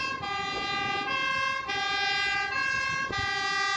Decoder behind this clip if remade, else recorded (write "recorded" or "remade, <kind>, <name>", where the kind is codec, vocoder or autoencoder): recorded